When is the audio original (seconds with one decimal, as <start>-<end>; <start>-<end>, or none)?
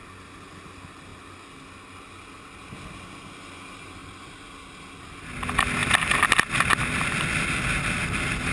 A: 0.0-8.5